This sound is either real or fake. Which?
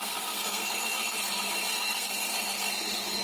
fake